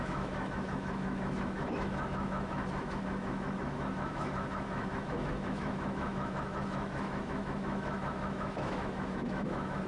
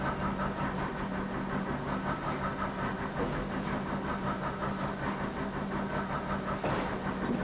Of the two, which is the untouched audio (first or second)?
second